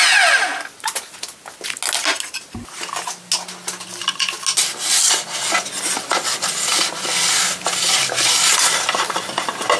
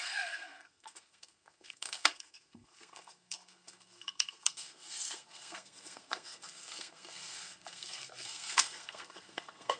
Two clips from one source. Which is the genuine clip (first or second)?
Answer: first